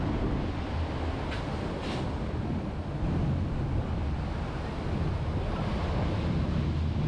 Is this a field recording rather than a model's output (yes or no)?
yes